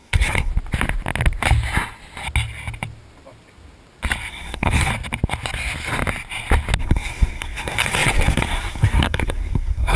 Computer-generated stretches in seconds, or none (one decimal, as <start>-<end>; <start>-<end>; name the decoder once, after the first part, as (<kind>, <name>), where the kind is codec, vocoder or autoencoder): 0.0-0.5 (codec, SNAC); 4.3-4.9; 6.8-10.0